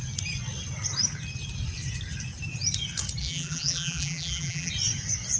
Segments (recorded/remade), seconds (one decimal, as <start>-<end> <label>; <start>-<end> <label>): 0.0-3.2 recorded; 3.2-4.7 remade; 4.7-5.4 recorded